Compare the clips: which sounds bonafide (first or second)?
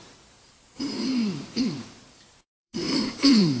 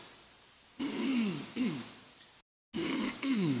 second